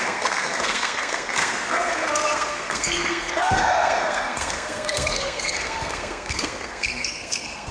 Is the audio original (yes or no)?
no